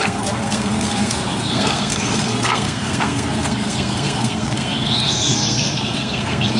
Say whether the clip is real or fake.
fake